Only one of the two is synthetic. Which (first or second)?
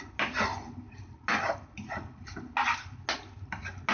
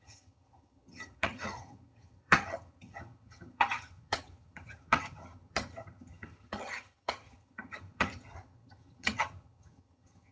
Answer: second